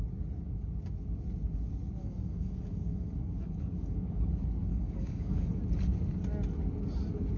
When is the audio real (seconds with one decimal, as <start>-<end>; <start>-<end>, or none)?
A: 0.0-2.0; 4.3-4.7; 5.6-7.4